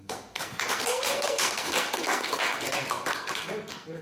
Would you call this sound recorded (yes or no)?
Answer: no